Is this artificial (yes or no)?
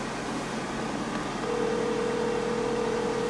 no